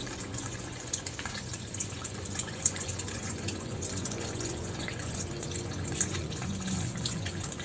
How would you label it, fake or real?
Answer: fake